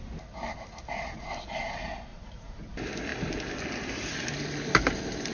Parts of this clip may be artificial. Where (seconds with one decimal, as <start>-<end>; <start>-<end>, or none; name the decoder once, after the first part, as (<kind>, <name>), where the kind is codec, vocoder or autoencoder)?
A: 2.1-2.7 (vocoder, Vocos)